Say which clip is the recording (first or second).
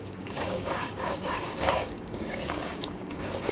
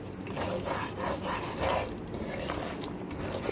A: second